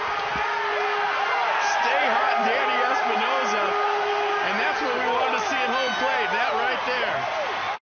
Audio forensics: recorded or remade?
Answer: recorded